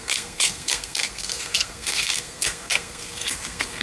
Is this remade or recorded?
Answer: remade